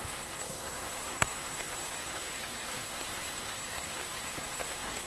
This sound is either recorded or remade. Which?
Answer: remade